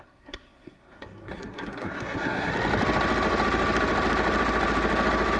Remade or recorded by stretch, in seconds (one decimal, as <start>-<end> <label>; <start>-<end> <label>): 0.0-2.5 remade; 2.5-5.4 recorded